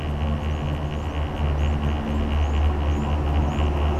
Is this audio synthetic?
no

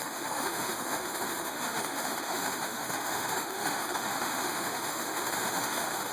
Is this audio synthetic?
yes